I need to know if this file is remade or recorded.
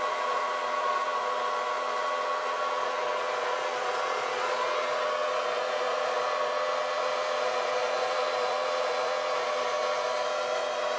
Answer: remade